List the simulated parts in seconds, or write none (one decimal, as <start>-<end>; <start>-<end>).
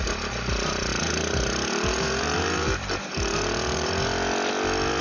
0.9-3.9